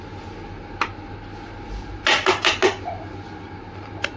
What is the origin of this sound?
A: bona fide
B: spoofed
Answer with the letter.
A